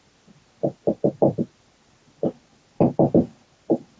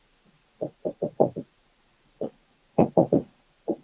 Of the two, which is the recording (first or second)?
first